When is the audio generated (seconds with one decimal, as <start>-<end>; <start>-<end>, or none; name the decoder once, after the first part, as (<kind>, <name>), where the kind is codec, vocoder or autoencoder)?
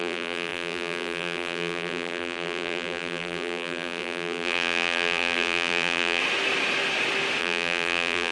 0.0-6.2 (vocoder, BigVGAN v2); 7.4-8.3